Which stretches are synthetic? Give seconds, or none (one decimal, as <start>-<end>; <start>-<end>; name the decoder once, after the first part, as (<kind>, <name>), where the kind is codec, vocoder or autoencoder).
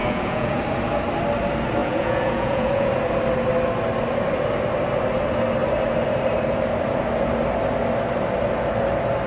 0.0-0.6 (vocoder, Vocos); 1.8-2.9